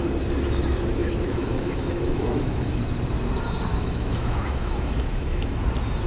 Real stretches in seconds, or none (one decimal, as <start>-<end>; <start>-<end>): 0.0-1.0; 2.8-3.7; 5.6-6.1